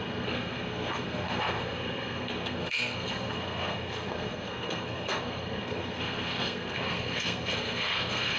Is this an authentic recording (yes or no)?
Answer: no